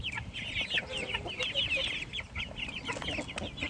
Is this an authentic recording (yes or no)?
yes